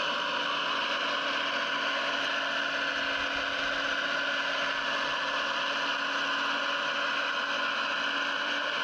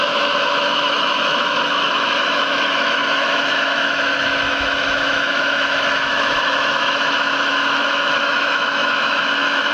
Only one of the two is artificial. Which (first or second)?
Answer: second